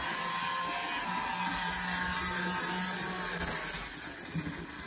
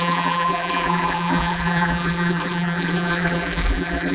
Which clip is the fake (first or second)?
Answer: second